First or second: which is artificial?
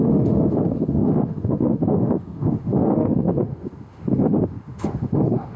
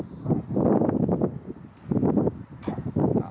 first